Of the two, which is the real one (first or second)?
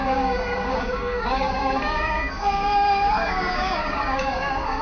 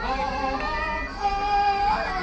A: second